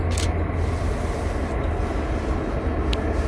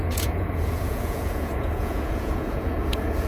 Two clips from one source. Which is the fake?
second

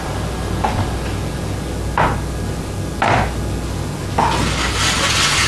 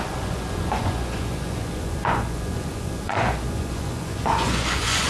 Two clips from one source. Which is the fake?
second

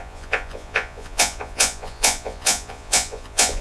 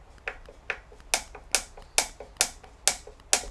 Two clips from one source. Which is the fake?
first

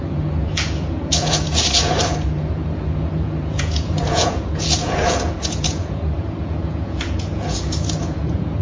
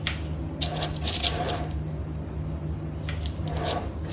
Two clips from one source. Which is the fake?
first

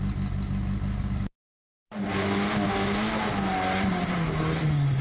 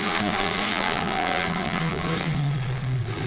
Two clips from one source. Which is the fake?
second